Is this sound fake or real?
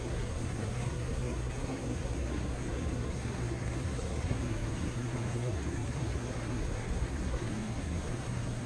fake